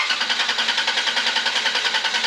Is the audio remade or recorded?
recorded